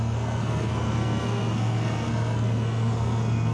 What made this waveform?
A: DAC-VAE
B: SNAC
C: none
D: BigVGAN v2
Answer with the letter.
B